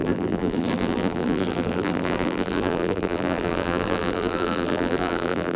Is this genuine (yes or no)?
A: no